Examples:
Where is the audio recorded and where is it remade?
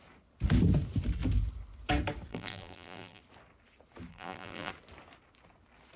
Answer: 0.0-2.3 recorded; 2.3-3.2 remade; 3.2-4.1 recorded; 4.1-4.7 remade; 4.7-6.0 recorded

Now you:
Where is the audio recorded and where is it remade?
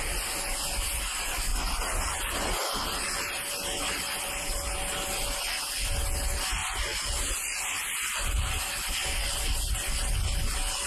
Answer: 0.0-1.5 recorded; 1.5-4.7 remade; 4.7-6.6 recorded; 6.6-8.6 remade; 8.6-10.9 recorded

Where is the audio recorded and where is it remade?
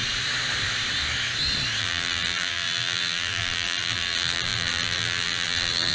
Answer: 0.0-1.8 recorded; 1.8-5.9 remade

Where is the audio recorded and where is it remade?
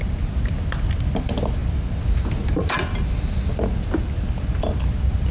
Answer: 0.0-5.3 recorded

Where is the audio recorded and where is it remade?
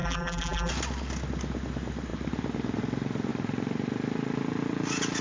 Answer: 0.0-0.7 remade; 0.7-5.2 recorded